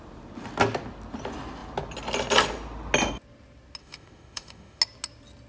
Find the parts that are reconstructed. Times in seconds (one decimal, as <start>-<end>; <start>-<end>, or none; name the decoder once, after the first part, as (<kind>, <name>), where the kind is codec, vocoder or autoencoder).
3.8-4.8 (autoencoder, DAC-VAE)